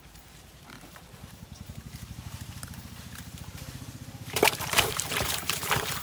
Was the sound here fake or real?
fake